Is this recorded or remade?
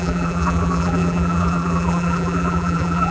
remade